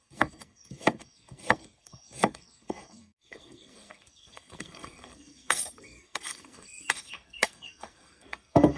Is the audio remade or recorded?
remade